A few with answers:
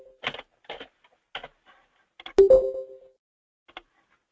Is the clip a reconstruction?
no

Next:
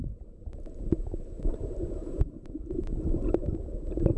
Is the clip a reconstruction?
yes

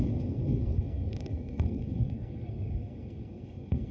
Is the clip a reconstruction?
yes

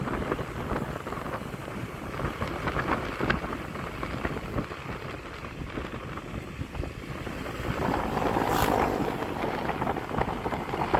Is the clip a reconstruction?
no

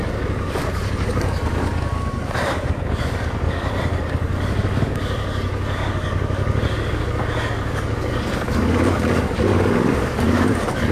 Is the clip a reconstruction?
yes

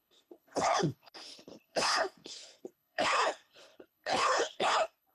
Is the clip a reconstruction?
yes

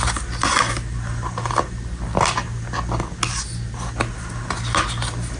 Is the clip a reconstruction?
no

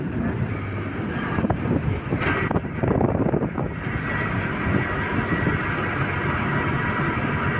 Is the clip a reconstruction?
yes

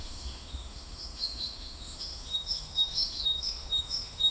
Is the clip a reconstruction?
yes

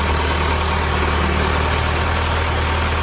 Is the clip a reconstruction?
no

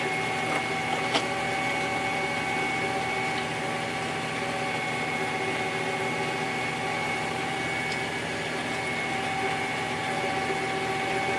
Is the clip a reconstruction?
no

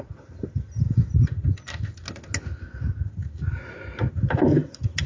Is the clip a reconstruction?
no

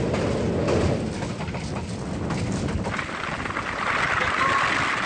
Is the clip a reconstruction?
no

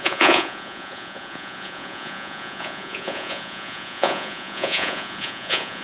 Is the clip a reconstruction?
yes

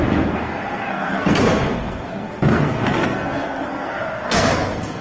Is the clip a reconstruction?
yes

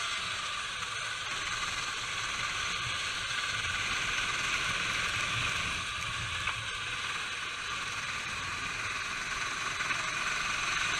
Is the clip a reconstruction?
no